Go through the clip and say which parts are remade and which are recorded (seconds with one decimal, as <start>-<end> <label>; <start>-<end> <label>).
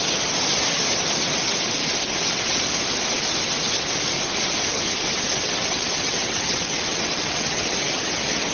0.0-5.3 recorded; 5.3-7.7 remade; 7.7-8.5 recorded